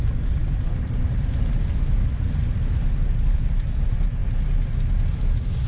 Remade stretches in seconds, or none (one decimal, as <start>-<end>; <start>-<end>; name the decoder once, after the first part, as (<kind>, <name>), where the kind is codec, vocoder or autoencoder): none